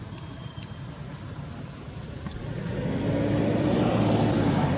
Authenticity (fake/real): real